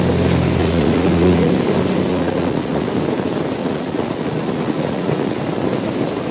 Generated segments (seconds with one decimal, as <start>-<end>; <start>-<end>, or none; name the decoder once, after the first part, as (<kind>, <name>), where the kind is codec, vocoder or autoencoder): 0.6-1.5 (vocoder, Vocos); 2.1-2.9; 3.6-5.4

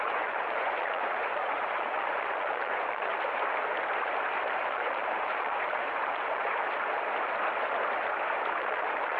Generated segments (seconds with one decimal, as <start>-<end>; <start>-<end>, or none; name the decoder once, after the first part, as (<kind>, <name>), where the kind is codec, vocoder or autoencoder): 0.0-3.1 (vocoder, Vocos); 4.6-6.6; 8.6-9.2